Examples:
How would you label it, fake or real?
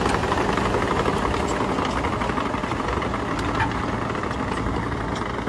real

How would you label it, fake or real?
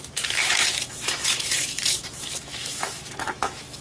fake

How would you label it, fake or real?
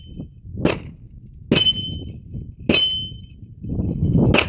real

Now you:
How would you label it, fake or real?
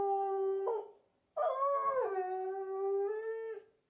real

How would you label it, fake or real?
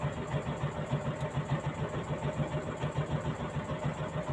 real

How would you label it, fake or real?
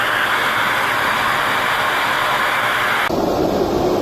real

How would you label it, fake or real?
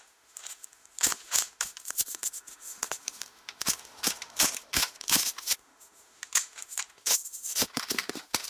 fake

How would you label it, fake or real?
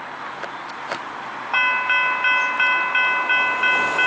real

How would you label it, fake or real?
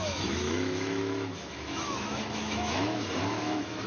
fake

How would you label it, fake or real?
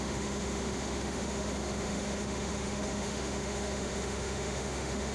fake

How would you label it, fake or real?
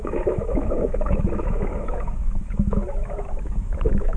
fake